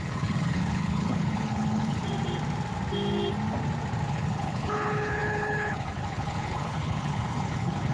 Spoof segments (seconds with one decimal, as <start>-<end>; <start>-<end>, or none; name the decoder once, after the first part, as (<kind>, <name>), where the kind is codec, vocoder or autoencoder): 0.0-2.0 (codec, HILCodec); 4.1-7.9